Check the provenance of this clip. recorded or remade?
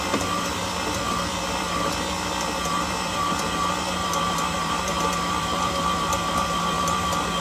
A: remade